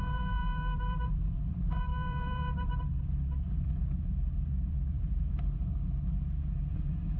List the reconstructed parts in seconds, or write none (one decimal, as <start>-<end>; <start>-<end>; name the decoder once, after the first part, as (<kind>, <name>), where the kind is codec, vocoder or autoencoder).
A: 0.0-5.7 (vocoder, BigVGAN v2)